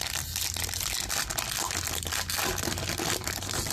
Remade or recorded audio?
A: recorded